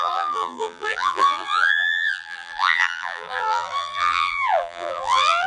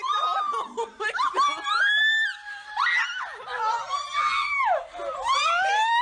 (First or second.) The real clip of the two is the second